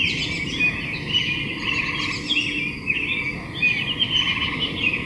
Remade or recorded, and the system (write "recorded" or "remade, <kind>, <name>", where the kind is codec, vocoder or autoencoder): recorded